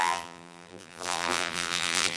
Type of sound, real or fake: fake